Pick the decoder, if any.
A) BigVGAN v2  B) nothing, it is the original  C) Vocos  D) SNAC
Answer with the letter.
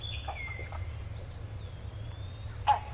B